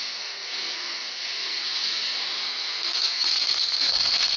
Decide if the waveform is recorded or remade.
remade